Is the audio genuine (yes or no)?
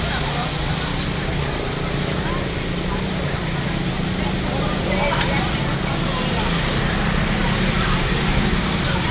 yes